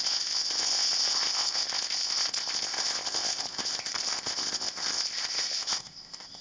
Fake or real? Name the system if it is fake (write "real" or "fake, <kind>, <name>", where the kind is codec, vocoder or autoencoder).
fake, codec, ZipCodec